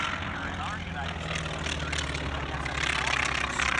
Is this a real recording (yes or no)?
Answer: yes